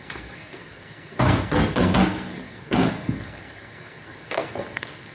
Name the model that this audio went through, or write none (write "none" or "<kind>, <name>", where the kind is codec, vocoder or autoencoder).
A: codec, SNAC